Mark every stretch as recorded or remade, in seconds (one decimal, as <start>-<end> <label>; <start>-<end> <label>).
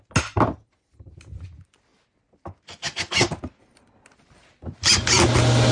0.0-5.7 recorded